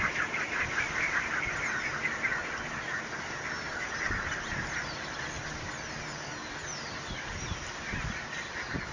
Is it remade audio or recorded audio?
recorded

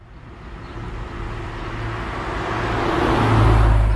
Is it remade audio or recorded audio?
recorded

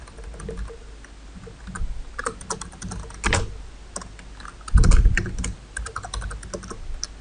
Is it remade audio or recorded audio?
recorded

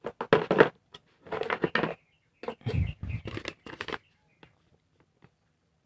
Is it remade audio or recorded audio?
recorded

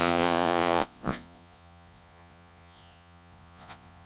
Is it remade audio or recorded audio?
remade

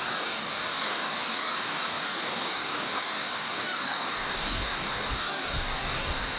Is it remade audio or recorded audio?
remade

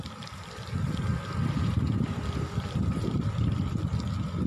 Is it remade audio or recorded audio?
recorded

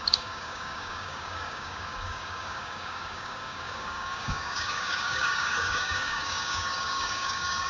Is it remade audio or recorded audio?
remade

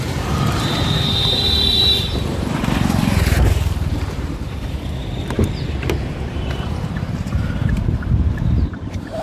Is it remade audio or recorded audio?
remade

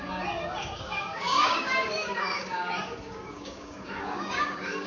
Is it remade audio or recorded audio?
remade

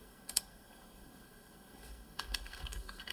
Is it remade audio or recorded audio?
remade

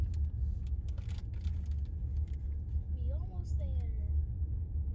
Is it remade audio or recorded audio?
recorded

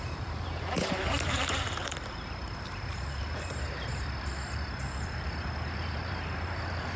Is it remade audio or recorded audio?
remade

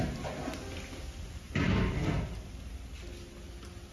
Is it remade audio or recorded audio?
recorded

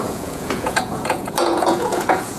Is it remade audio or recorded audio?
remade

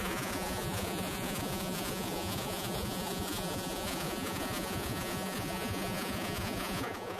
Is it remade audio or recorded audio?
remade